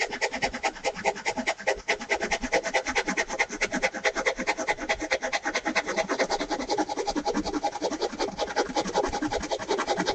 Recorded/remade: recorded